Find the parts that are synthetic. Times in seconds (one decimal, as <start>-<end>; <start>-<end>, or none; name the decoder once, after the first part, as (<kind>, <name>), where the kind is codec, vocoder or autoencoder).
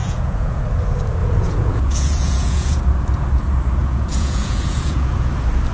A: 0.0-0.6 (vocoder, Vocos); 1.2-2.8; 3.8-5.3